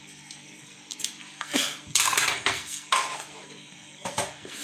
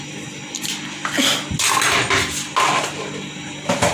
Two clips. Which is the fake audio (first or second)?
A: first